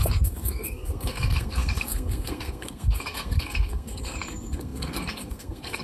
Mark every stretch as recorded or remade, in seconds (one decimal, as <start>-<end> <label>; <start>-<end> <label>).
0.0-5.8 remade